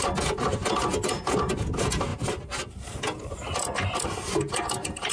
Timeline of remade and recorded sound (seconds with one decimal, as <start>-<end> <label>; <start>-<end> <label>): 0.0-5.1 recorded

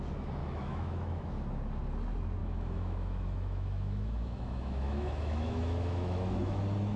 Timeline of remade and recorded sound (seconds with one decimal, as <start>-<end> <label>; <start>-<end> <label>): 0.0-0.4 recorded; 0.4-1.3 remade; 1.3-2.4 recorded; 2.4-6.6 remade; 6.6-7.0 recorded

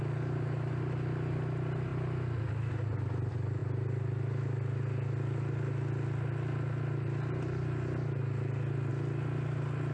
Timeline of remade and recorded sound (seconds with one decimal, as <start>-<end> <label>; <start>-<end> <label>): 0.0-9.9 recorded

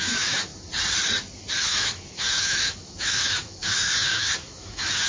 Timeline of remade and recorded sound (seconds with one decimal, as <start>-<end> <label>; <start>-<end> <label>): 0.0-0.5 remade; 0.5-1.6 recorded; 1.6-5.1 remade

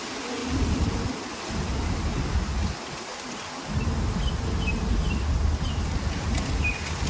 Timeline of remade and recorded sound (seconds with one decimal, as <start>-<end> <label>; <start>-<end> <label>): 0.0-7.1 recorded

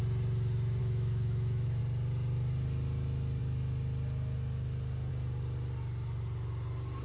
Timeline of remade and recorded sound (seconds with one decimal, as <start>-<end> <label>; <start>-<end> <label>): 0.0-0.8 recorded; 0.8-1.8 remade; 1.8-7.0 recorded